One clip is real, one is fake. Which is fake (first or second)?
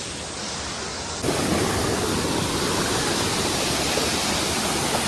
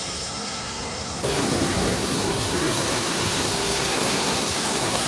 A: second